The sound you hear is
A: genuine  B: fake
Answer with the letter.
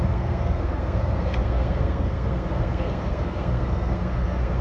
B